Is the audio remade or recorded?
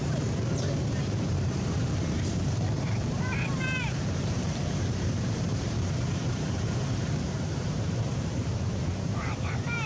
remade